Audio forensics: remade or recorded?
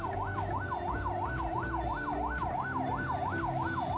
recorded